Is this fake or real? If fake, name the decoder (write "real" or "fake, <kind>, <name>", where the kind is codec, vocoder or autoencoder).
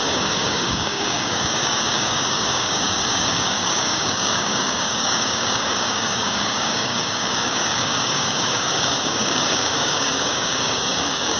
fake, codec, DAC